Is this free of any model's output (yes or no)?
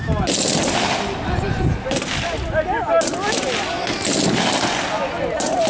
yes